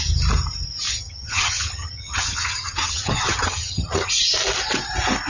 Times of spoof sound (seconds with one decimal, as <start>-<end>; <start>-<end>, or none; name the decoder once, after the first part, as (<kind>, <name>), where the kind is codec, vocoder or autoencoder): 0.9-4.1 (vocoder, HiFi-GAN)